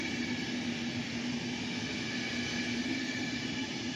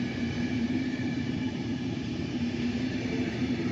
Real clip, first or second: first